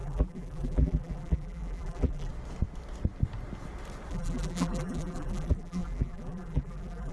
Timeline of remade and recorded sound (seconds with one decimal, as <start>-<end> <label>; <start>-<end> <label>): 0.0-2.3 remade; 2.3-4.1 recorded; 4.1-7.1 remade